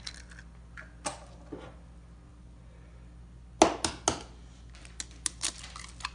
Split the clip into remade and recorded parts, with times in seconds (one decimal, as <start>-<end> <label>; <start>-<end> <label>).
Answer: 0.0-6.1 recorded